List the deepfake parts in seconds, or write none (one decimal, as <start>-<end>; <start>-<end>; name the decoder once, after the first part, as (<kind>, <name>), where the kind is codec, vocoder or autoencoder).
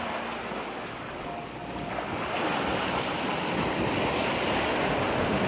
none